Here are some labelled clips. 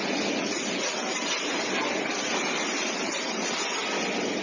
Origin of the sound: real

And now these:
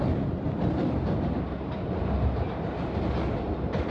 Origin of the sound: real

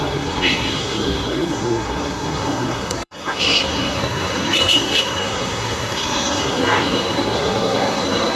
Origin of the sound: fake